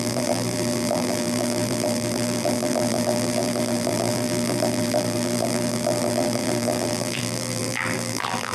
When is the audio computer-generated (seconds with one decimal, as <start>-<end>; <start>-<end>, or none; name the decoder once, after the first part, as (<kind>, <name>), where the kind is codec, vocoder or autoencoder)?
0.0-8.5 (vocoder, BigVGAN v2)